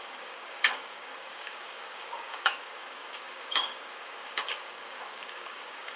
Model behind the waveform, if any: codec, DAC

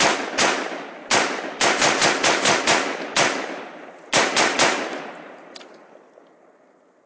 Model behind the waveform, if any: none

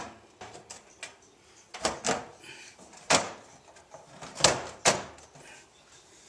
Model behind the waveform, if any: none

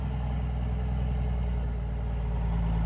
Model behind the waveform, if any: none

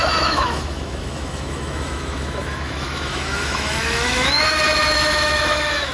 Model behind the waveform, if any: autoencoder, DAC-VAE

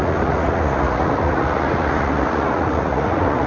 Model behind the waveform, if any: vocoder, Vocos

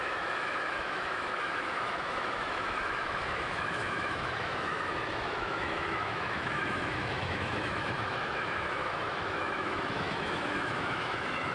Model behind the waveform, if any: autoencoder, DAC-VAE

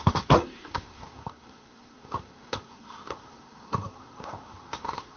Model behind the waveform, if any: codec, SNAC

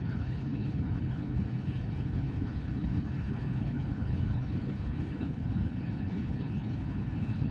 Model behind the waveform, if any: codec, HILCodec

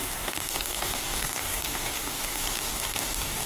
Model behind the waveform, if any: codec, DAC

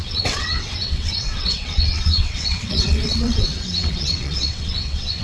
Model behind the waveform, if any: vocoder, WaveNeXt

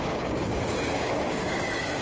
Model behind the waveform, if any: codec, DAC